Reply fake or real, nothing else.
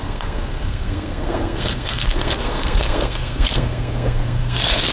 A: fake